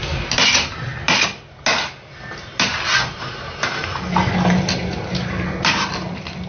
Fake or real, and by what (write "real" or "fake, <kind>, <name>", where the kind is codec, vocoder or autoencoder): real